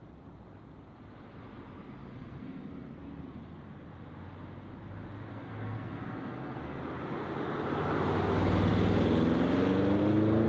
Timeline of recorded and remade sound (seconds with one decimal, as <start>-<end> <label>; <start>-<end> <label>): 0.0-2.1 recorded; 2.1-3.0 remade; 3.0-5.3 recorded; 5.3-6.8 remade; 6.8-10.5 recorded